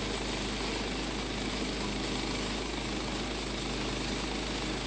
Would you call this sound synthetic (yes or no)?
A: no